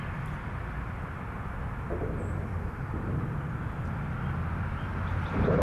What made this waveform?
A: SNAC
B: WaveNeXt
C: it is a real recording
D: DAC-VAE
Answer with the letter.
C